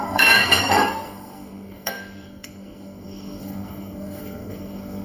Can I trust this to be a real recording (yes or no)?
no